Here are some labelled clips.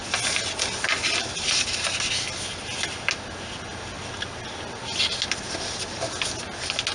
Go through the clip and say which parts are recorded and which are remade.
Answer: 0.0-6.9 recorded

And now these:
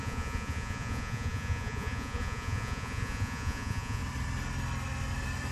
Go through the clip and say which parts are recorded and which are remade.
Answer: 0.0-4.0 remade; 4.0-5.5 recorded

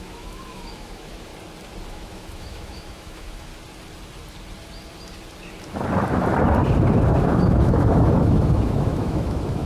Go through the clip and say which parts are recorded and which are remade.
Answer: 0.0-1.3 remade; 1.3-1.9 recorded; 1.9-3.5 remade; 3.5-7.2 recorded; 7.2-9.7 remade